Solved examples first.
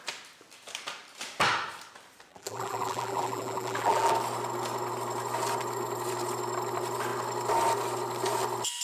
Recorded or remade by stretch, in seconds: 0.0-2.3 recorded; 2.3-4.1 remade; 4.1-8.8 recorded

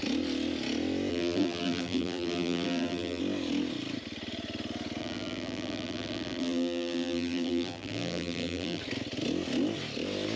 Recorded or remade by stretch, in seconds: 0.0-1.1 recorded; 1.1-3.2 remade; 3.2-5.0 recorded; 5.0-8.8 remade; 8.8-10.4 recorded

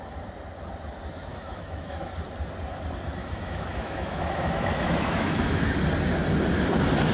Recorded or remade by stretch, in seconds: 0.0-1.3 recorded; 1.3-2.1 remade; 2.1-3.2 recorded; 3.2-5.8 remade; 5.8-7.1 recorded

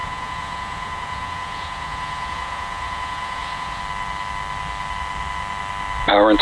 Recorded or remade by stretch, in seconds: 0.0-3.8 remade; 3.8-6.4 recorded